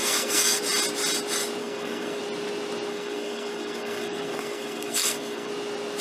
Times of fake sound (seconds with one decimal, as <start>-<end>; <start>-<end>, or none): 0.0-0.6; 1.6-2.2; 2.9-5.5